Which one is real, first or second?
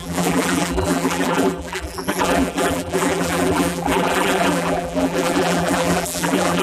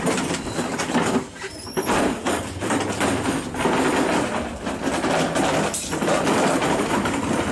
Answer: second